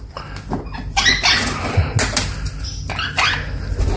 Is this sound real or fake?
real